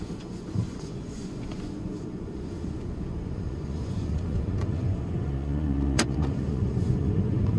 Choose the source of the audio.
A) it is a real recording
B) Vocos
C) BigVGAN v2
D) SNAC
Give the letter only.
B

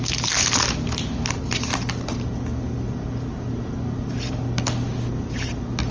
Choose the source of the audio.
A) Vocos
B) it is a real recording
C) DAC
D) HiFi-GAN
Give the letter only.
B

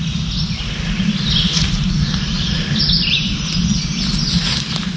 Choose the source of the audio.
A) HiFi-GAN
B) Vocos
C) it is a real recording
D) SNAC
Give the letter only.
C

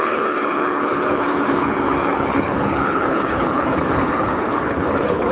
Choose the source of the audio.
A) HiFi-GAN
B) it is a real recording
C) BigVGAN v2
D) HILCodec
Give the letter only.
D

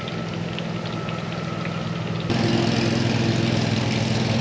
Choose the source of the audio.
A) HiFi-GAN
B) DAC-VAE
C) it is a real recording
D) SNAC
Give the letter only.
C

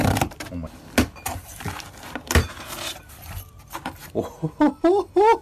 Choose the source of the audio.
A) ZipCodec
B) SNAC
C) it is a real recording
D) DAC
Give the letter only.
C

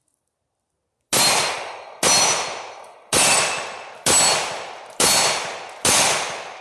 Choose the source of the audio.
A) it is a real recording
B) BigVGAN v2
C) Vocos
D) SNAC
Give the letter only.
A